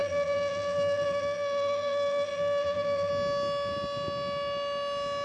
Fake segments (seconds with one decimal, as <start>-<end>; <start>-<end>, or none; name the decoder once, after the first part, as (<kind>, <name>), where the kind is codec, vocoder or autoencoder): 0.0-3.1 (vocoder, BigVGAN v2)